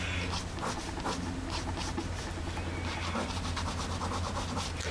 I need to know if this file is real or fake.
real